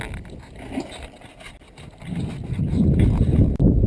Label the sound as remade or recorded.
recorded